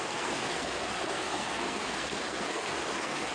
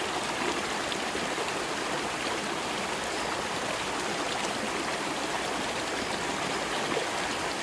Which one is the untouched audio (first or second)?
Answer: second